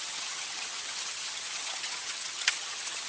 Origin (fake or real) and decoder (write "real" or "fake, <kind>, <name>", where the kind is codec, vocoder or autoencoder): fake, vocoder, HiFi-GAN